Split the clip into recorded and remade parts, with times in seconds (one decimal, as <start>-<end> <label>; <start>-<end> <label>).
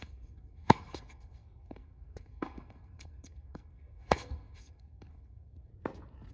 0.0-5.7 remade; 5.7-6.3 recorded